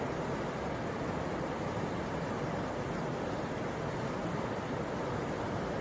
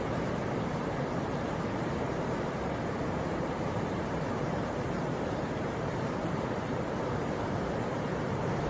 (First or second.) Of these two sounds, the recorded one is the first